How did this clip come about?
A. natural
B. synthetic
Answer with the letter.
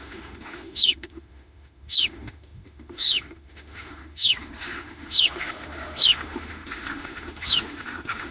B